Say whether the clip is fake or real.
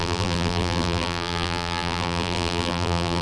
fake